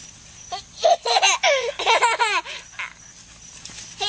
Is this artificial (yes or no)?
no